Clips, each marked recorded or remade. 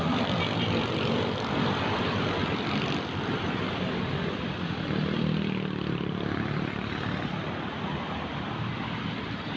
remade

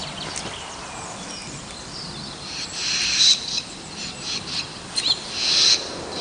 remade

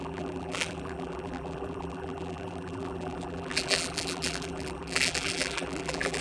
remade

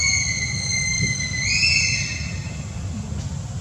recorded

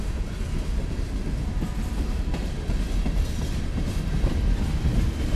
recorded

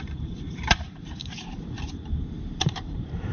remade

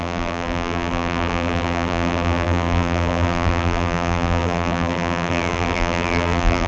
remade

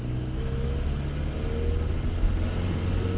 recorded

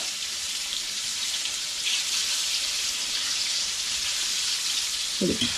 remade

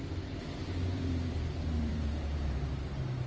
remade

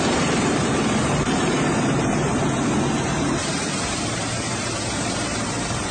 remade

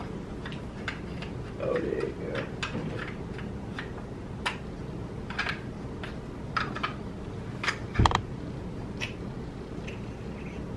recorded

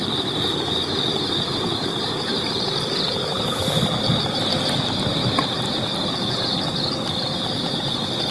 remade